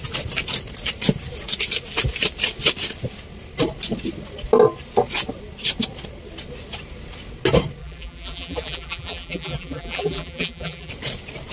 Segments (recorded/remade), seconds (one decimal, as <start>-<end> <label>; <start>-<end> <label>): 0.0-7.8 recorded; 7.8-10.9 remade; 10.9-11.5 recorded